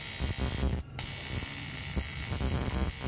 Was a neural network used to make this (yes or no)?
no